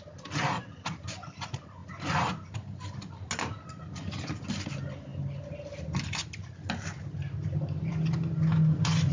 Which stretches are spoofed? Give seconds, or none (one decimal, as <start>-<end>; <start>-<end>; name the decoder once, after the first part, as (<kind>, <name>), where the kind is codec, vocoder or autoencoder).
none